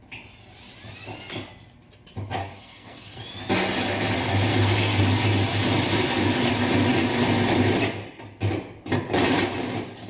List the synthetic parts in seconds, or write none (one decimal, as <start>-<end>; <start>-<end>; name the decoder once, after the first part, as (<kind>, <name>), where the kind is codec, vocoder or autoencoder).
2.4-3.2 (codec, SNAC); 4.5-5.0